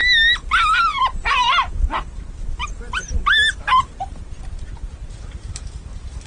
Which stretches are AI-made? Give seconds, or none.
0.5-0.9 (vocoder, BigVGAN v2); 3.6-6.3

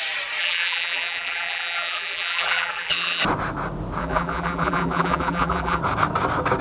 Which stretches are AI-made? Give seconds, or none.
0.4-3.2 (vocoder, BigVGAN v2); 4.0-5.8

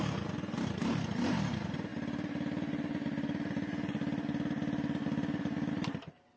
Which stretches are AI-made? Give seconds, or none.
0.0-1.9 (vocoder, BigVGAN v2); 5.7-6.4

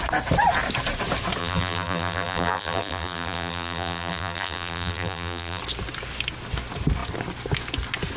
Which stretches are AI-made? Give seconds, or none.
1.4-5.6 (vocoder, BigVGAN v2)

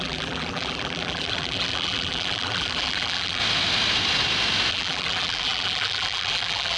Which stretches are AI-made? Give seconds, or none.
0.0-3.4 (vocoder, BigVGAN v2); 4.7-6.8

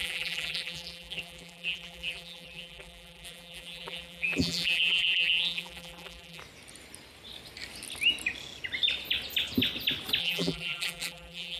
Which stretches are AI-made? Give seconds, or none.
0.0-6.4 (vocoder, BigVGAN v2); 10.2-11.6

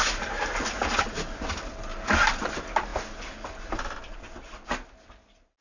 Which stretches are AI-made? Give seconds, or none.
0.0-0.5 (vocoder, BigVGAN v2); 1.9-2.5